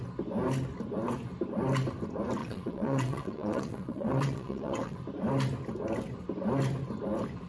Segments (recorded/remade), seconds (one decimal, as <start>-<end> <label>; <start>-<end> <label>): 0.0-2.4 recorded; 2.4-5.0 remade; 5.0-7.5 recorded